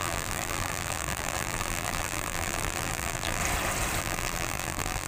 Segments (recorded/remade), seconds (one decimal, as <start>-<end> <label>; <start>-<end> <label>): 0.0-3.4 remade; 3.4-4.0 recorded; 4.0-5.1 remade